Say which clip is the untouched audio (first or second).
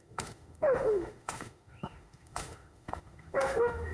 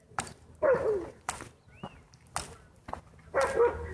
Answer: second